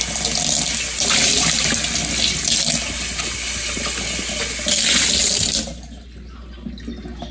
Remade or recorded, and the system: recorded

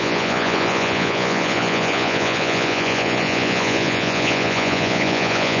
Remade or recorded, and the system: remade, vocoder, Vocos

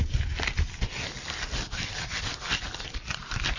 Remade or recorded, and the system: recorded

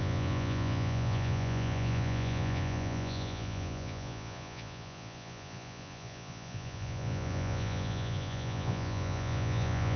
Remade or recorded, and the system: remade, vocoder, Vocos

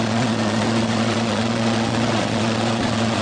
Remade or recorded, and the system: remade, vocoder, Vocos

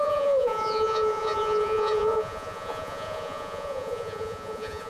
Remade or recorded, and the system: remade, vocoder, Vocos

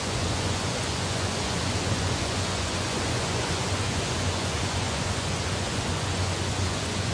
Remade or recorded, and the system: remade, vocoder, Vocos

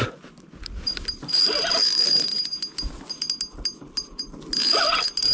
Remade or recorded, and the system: recorded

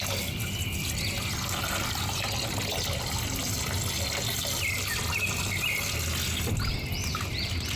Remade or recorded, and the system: recorded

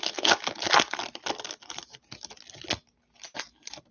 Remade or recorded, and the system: recorded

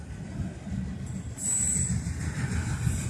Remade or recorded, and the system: recorded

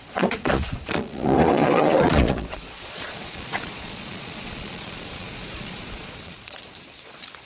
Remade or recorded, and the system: remade, vocoder, Vocos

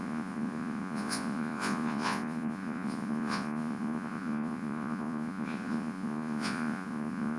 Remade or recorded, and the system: remade, vocoder, Vocos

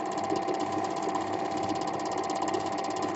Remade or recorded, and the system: recorded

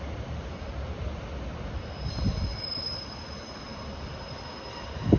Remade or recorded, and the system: recorded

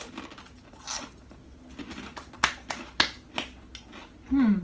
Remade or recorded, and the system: recorded